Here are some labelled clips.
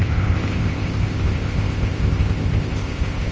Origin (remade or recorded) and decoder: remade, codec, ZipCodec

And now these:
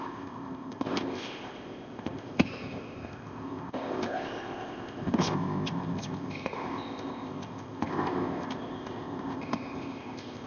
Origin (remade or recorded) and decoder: remade, codec, ZipCodec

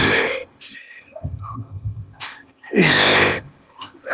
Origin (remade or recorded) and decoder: remade, codec, ZipCodec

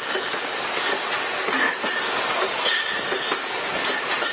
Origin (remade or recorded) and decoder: recorded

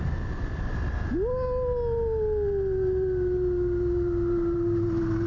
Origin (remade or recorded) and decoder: recorded